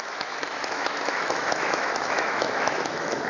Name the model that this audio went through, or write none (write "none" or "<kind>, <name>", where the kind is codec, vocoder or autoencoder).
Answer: autoencoder, DAC-VAE